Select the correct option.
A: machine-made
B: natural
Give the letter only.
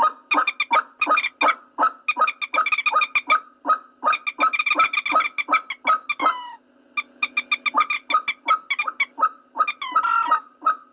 B